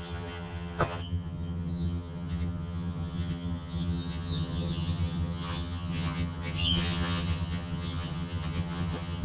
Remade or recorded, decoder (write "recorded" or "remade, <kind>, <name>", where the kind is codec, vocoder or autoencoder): remade, vocoder, HiFi-GAN